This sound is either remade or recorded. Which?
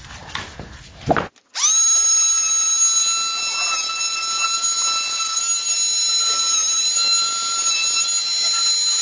recorded